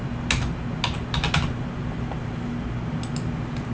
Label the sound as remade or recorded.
recorded